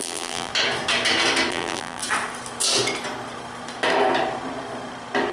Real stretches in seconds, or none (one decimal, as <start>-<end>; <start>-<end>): 0.5-1.5; 2.0-5.3